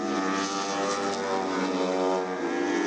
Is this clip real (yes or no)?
yes